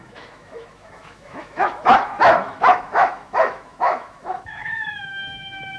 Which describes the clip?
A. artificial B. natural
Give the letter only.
A